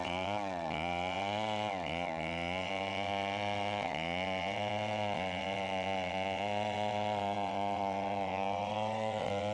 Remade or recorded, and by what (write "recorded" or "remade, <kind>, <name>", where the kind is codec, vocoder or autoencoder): remade, vocoder, WaveNeXt